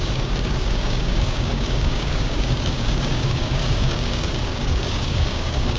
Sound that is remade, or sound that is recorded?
remade